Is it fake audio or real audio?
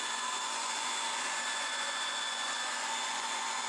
fake